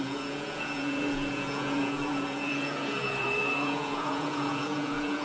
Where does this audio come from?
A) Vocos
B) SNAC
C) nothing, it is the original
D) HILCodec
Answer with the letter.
A